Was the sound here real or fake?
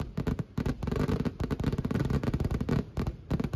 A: real